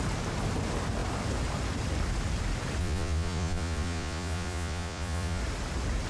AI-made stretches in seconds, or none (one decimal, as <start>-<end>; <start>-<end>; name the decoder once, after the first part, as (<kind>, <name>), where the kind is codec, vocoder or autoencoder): 2.8-5.4 (vocoder, Vocos)